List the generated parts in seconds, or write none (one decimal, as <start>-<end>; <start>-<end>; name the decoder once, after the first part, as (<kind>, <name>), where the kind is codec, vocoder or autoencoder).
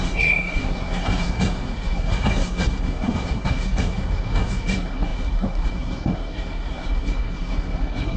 0.0-8.2 (codec, SNAC)